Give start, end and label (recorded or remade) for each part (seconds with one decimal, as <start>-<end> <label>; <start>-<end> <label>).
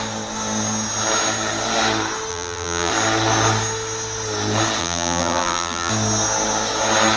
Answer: 0.0-2.3 recorded; 2.3-2.9 remade; 2.9-4.8 recorded; 4.8-5.9 remade; 5.9-7.2 recorded